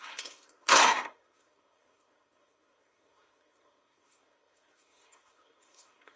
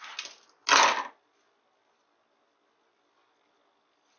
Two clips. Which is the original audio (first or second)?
second